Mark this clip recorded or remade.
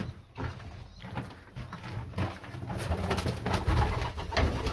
recorded